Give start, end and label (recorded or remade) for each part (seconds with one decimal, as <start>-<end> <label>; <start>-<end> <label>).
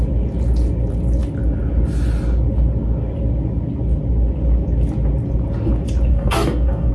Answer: 0.0-6.1 recorded; 6.1-6.9 remade